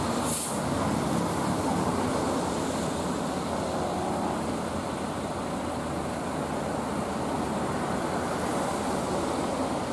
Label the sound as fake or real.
real